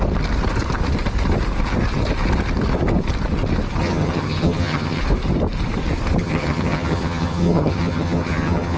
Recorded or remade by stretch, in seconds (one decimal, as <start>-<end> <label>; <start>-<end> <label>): 0.0-3.8 recorded; 3.8-5.0 remade; 5.0-6.2 recorded; 6.2-8.8 remade